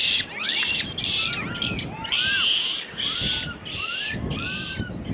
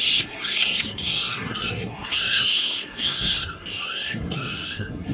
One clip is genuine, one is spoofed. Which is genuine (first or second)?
first